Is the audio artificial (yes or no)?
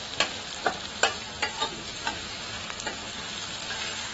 no